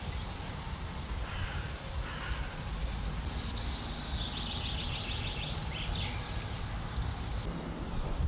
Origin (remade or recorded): recorded